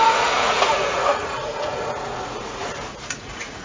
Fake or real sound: fake